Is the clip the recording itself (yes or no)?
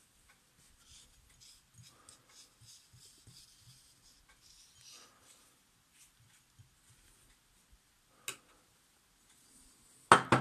yes